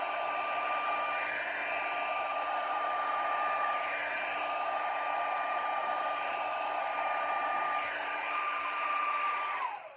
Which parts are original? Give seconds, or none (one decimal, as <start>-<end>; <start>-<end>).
0.0-2.3; 4.9-5.8

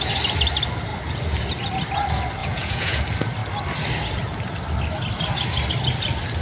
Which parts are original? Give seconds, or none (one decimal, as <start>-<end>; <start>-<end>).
0.0-2.4; 3.0-6.4